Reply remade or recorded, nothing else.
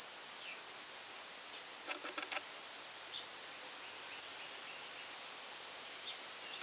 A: recorded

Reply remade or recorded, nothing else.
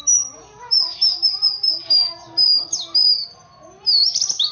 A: recorded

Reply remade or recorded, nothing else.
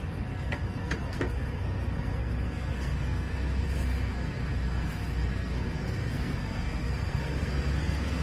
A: remade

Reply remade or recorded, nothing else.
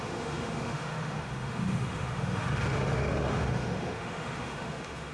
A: remade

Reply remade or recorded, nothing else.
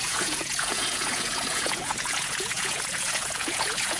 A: remade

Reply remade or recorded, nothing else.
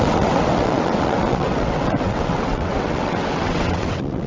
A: remade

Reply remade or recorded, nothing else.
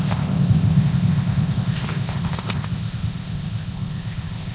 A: remade